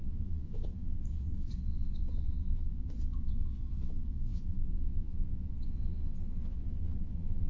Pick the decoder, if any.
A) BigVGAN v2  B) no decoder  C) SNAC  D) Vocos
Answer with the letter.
D